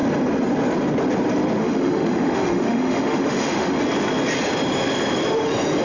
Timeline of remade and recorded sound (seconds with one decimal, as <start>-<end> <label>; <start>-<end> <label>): 0.0-1.6 recorded; 1.6-3.8 remade; 3.8-5.8 recorded